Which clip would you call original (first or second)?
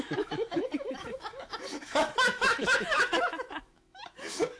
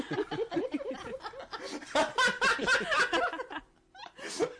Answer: second